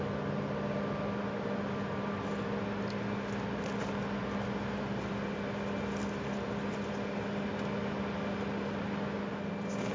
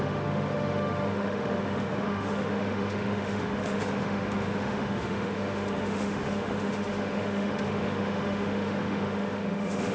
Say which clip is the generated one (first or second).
second